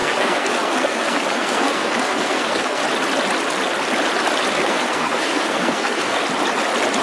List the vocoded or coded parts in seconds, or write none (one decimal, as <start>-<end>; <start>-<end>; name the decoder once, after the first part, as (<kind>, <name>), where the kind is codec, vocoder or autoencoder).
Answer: 0.0-2.8 (codec, SNAC); 4.5-6.2